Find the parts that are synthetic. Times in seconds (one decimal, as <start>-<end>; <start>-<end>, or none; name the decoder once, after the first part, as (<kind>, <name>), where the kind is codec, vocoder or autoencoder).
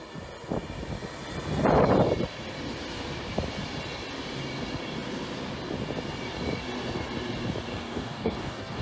7.7-8.8 (codec, DAC)